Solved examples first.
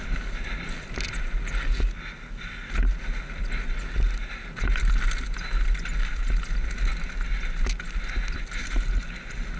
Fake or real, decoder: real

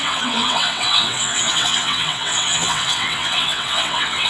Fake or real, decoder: fake, vocoder, WaveNeXt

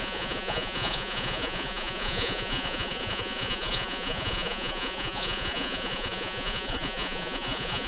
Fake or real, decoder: fake, vocoder, Vocos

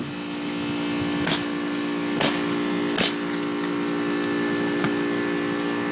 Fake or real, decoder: real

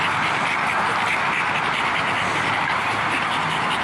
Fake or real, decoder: real